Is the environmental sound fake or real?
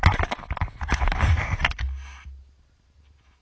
real